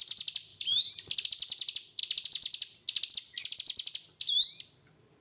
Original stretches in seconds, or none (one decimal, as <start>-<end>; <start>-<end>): 0.0-0.5; 1.1-5.2

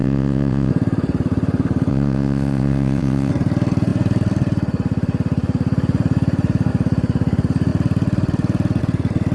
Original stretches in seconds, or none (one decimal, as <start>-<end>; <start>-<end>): 0.7-1.9; 3.3-9.3